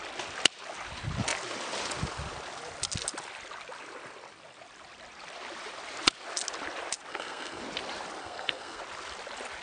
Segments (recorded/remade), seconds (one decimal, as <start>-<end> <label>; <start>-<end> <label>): 0.0-7.1 recorded; 7.1-7.6 remade; 7.6-8.2 recorded; 8.2-8.8 remade; 8.8-9.6 recorded